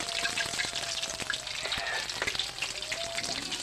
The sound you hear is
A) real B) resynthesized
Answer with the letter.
A